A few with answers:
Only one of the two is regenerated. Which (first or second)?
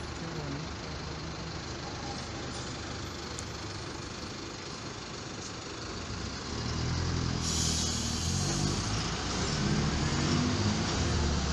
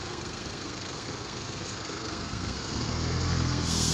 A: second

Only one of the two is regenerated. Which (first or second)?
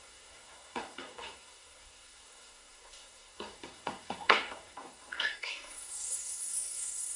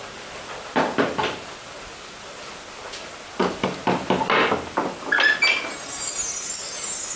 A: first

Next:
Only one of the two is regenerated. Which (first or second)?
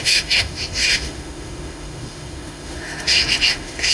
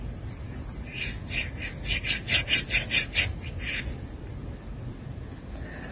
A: first